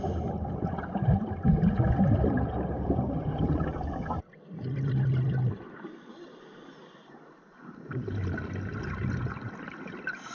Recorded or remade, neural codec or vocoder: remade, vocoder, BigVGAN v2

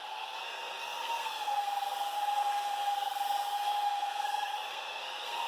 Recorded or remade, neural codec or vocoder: remade, codec, SNAC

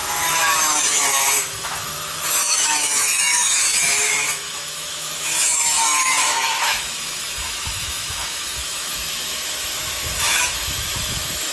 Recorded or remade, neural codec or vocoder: remade, autoencoder, DAC-VAE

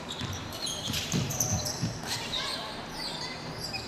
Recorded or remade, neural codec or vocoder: remade, vocoder, BigVGAN v2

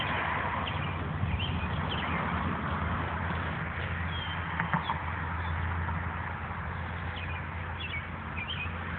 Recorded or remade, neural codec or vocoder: recorded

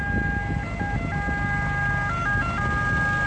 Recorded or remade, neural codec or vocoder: recorded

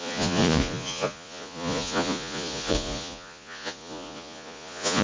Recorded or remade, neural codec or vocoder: remade, vocoder, Vocos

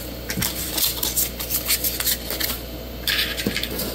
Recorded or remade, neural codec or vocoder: recorded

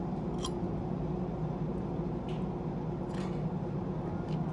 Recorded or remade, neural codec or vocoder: recorded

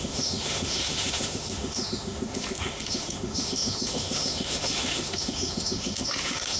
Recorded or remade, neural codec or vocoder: remade, autoencoder, DAC-VAE